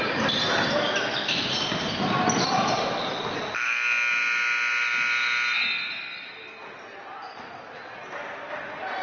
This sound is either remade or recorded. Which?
recorded